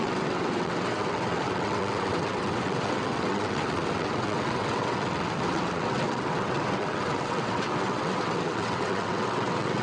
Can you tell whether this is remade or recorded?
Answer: remade